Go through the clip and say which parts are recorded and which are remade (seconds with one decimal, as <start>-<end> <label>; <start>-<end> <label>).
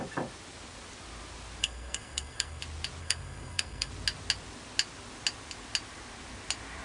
0.0-1.6 recorded; 1.6-2.6 remade; 2.6-3.0 recorded; 3.0-3.9 remade; 3.9-6.8 recorded